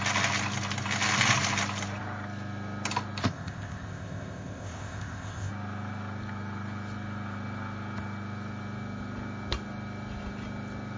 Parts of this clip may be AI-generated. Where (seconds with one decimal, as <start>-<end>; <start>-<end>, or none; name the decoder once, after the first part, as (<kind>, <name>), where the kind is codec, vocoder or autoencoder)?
3.2-5.5 (codec, ZipCodec)